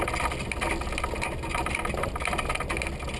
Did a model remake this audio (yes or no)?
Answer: no